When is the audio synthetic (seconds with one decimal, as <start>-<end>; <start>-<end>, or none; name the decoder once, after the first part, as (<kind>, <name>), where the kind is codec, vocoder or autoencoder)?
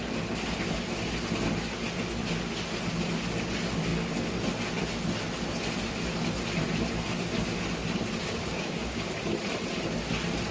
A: 8.2-9.1 (codec, DAC)